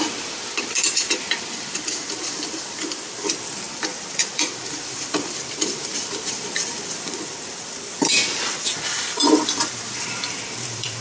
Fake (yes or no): yes